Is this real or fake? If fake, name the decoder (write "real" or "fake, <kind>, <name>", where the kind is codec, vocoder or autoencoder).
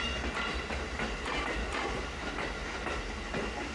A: real